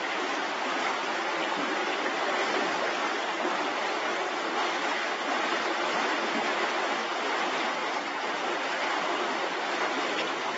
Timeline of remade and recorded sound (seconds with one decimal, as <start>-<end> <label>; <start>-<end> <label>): 0.0-7.8 recorded; 7.8-9.4 remade; 9.4-10.6 recorded